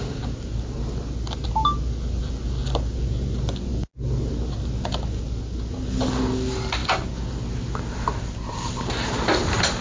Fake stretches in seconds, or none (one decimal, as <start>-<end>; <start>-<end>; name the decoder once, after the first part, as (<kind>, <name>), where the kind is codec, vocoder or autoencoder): none

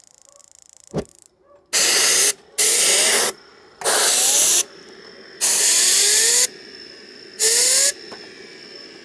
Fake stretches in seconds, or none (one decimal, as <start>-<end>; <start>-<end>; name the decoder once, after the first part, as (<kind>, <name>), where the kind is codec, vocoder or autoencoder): none